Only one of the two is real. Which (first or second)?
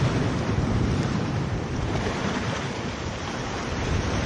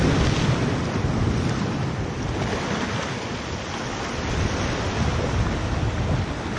second